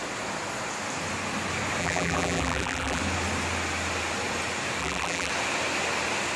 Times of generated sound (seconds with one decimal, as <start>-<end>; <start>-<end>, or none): 1.8-3.0; 4.8-5.3